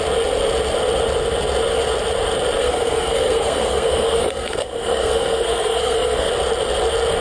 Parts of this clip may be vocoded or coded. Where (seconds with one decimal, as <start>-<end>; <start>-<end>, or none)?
2.6-6.3

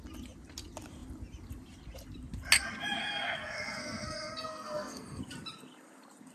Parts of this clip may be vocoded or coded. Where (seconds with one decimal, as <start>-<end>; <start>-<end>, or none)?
3.0-5.2

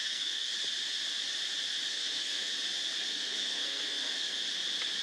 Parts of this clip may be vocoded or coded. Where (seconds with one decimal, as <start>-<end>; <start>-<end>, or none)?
0.0-0.5; 1.9-2.5; 3.1-4.4